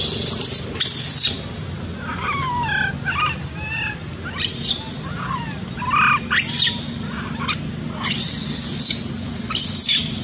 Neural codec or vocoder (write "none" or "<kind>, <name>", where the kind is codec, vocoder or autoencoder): none